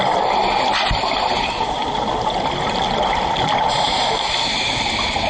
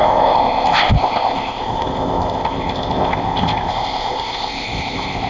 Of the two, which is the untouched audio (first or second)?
first